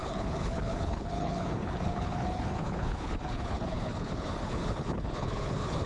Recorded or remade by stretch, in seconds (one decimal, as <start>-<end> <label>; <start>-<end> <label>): 0.0-5.9 remade